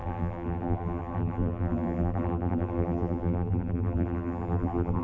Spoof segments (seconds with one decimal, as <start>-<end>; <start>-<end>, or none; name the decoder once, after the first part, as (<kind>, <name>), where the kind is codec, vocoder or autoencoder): 0.0-5.0 (vocoder, BigVGAN v2)